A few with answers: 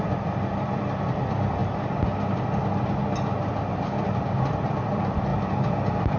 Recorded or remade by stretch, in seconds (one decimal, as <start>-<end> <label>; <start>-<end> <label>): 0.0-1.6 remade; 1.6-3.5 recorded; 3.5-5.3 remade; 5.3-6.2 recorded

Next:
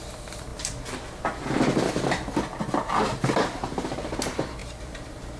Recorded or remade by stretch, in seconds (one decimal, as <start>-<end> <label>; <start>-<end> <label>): 0.0-5.4 recorded

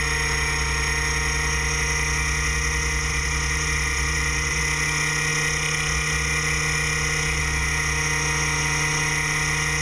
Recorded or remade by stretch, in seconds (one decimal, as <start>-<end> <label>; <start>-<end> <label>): 0.0-3.1 recorded; 3.1-4.6 remade; 4.6-9.8 recorded

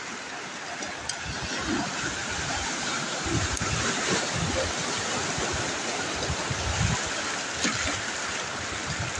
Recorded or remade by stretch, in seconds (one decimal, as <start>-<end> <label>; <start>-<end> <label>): 0.0-2.2 recorded; 2.2-3.9 remade; 3.9-9.2 recorded